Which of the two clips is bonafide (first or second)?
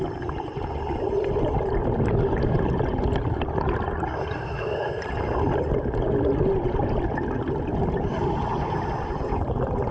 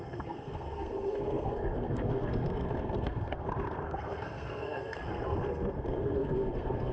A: first